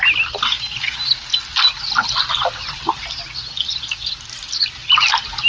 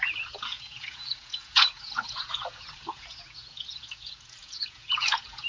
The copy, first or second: second